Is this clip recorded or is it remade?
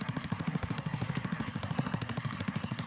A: remade